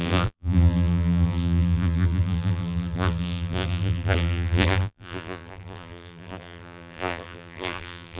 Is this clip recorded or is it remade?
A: remade